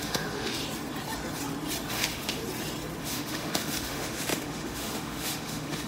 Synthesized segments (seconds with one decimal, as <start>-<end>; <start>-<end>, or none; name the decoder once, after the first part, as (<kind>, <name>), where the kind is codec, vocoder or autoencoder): 0.0-0.6 (autoencoder, DAC-VAE); 1.9-2.4; 3.0-5.9